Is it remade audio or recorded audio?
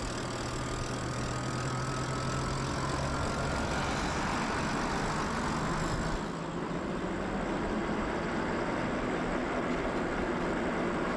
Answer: recorded